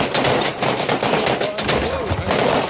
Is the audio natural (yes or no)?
yes